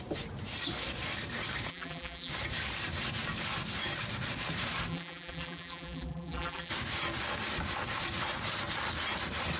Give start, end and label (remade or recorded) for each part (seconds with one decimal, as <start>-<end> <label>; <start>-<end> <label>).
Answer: 0.0-1.7 recorded; 1.7-2.3 remade; 2.3-4.9 recorded; 4.9-6.7 remade; 6.7-9.6 recorded